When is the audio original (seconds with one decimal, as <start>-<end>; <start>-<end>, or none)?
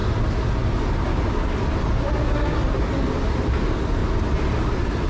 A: 0.0-5.1